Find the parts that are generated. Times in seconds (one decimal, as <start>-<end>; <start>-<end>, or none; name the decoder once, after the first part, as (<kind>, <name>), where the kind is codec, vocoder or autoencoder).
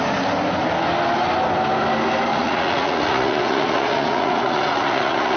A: 2.3-5.4 (vocoder, Vocos)